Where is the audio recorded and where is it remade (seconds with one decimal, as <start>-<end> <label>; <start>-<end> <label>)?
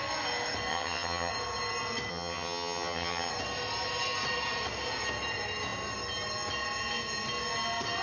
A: 0.0-0.7 recorded; 0.7-1.3 remade; 1.3-2.1 recorded; 2.1-3.3 remade; 3.3-8.0 recorded